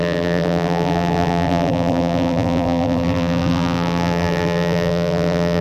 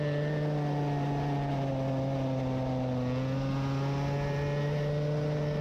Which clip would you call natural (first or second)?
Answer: second